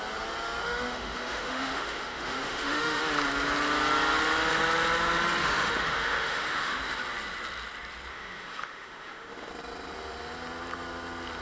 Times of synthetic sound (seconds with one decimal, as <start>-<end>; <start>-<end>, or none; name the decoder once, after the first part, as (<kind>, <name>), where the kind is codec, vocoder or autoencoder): 0.6-3.0 (autoencoder, DAC-VAE); 5.4-6.8; 8.1-9.5